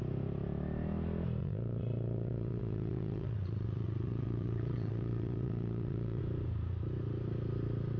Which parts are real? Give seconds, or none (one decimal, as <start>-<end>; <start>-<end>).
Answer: 0.0-1.4; 6.2-8.0